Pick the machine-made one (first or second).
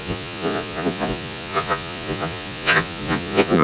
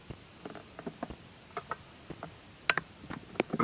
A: first